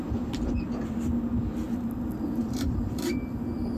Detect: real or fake real